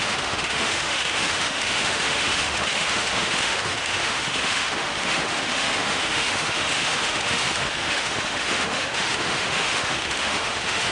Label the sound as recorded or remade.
remade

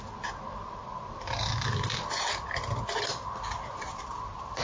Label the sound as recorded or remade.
recorded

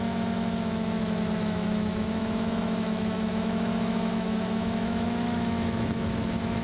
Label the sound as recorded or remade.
remade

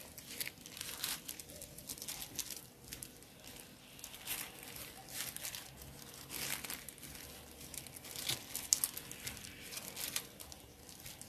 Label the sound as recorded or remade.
recorded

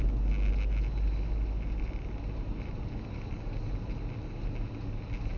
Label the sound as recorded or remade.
recorded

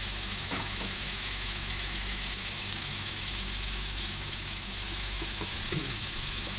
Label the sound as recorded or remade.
remade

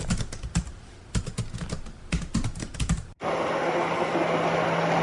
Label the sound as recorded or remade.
recorded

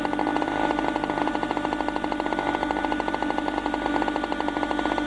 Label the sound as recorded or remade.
recorded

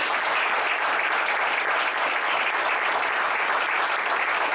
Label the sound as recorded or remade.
recorded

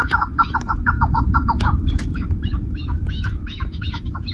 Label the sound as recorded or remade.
remade